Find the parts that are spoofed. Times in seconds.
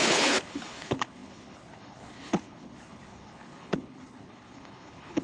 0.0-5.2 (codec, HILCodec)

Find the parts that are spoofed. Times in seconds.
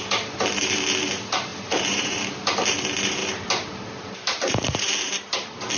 1.5-2.2 (vocoder, BigVGAN v2); 3.2-5.2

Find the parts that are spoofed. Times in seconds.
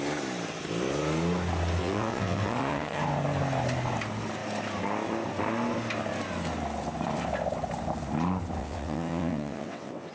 1.8-3.0 (vocoder, WaveNeXt); 8.6-10.1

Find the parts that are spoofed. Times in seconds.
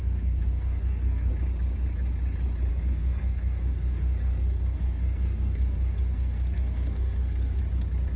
0.0-1.3 (codec, SNAC); 2.7-7.6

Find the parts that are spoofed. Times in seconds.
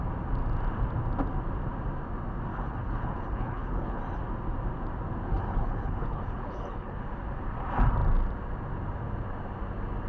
2.5-4.0 (codec, HILCodec); 5.3-7.0